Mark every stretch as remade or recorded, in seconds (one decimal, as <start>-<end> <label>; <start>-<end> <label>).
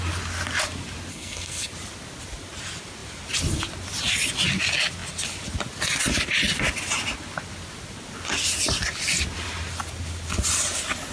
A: 0.0-1.1 recorded; 1.1-1.7 remade; 1.7-11.1 recorded